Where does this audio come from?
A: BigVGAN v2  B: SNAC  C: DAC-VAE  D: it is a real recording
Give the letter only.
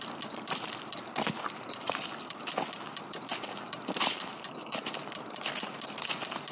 D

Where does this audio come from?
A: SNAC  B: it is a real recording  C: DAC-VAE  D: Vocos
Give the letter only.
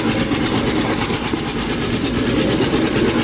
B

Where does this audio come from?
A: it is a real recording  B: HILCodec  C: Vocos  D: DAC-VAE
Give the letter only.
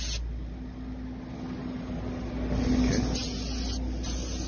A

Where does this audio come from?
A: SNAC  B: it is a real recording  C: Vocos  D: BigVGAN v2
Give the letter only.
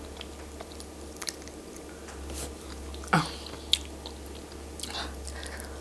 B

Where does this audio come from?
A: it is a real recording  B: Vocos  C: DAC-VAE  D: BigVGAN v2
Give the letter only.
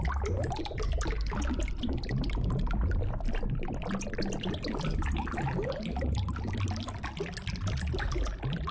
A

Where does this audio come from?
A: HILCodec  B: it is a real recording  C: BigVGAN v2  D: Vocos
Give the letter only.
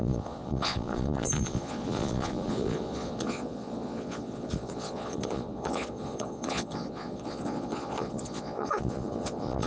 D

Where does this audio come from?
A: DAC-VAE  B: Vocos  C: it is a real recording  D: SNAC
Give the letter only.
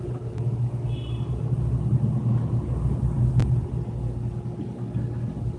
C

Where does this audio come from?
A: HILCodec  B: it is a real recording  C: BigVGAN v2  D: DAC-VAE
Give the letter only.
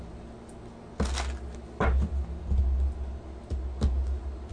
B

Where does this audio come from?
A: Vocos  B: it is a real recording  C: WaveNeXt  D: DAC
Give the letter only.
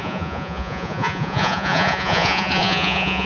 A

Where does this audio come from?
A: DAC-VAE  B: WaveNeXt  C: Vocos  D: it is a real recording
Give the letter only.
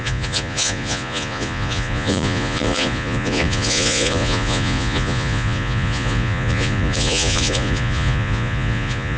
C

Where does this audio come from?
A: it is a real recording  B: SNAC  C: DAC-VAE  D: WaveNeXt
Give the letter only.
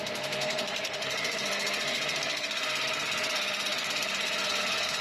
B